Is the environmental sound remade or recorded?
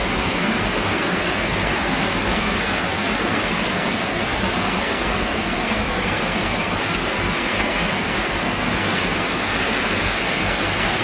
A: remade